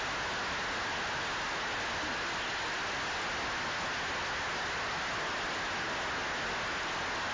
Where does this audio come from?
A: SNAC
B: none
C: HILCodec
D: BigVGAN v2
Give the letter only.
B